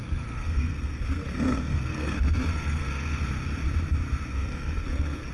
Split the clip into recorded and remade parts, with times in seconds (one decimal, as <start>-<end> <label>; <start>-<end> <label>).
0.0-3.2 remade; 3.2-4.3 recorded; 4.3-5.3 remade